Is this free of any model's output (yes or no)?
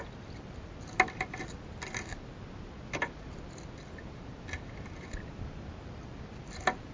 yes